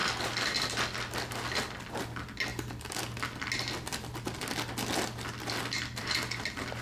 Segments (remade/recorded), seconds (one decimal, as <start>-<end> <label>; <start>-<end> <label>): 0.0-6.8 recorded